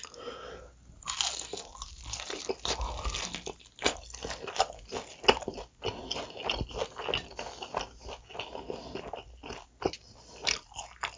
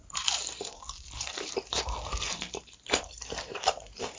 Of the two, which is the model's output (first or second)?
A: second